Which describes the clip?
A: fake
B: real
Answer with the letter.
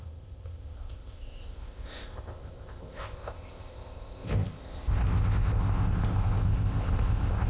A